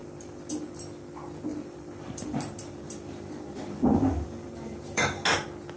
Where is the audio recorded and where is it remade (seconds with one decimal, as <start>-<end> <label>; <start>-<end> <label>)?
0.0-0.5 remade; 0.5-1.5 recorded; 1.5-5.0 remade; 5.0-5.8 recorded

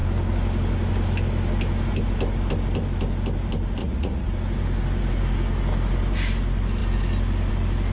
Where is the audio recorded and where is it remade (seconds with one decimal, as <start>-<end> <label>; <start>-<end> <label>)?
0.0-3.8 recorded; 3.8-4.3 remade; 4.3-7.9 recorded